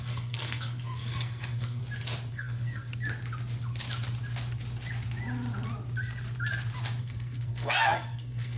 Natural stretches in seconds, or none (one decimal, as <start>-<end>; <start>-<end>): 1.8-2.3; 2.9-7.0